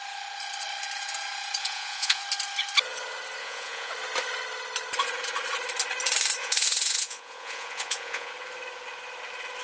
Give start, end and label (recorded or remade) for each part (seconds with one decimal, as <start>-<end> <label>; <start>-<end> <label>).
0.0-1.6 recorded; 1.6-2.2 remade; 2.2-3.4 recorded; 3.4-3.9 remade; 3.9-6.4 recorded; 6.4-8.3 remade; 8.3-9.6 recorded